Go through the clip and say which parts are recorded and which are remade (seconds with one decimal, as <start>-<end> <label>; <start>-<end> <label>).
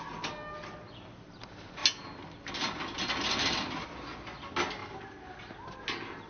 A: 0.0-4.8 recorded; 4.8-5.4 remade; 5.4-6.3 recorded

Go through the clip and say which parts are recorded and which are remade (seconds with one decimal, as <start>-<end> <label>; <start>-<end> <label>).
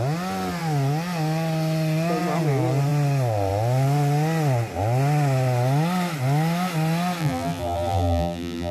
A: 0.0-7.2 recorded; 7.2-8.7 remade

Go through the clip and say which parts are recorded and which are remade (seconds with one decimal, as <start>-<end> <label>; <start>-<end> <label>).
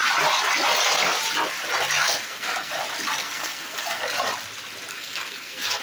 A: 0.0-2.0 recorded; 2.0-2.7 remade; 2.7-3.2 recorded; 3.2-4.0 remade; 4.0-4.9 recorded; 4.9-5.8 remade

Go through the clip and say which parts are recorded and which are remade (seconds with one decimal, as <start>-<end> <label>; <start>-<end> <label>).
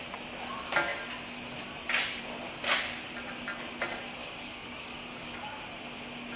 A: 0.0-4.2 recorded; 4.2-5.5 remade; 5.5-6.4 recorded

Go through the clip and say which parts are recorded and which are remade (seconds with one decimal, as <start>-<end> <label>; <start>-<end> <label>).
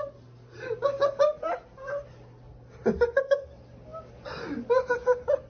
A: 0.0-5.5 recorded